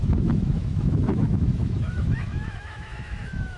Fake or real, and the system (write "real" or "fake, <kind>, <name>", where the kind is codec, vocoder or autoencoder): fake, autoencoder, DAC-VAE